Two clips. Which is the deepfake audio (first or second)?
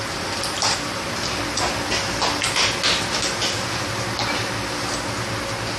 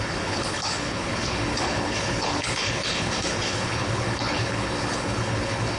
second